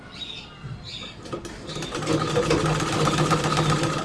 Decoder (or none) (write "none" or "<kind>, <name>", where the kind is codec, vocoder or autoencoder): none